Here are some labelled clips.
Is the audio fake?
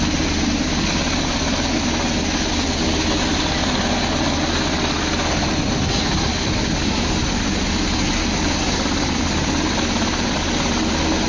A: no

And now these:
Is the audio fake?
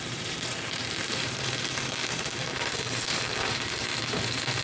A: yes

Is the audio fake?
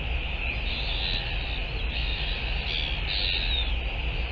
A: no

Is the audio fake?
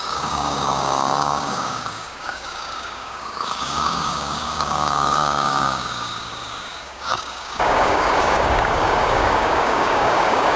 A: yes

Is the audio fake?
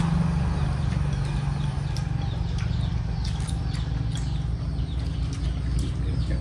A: no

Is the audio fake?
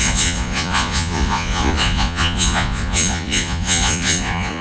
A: yes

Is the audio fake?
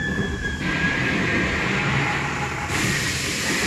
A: no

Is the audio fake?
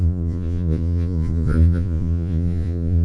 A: yes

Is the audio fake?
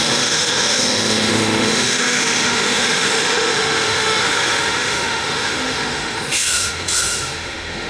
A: yes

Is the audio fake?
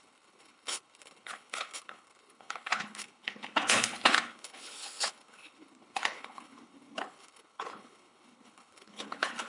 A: yes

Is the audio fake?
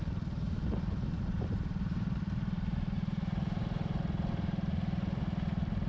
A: yes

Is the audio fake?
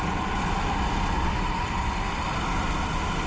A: no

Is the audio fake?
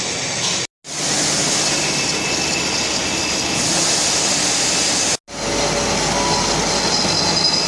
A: no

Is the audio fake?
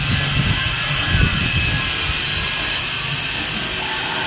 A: no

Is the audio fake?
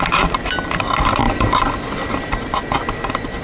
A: no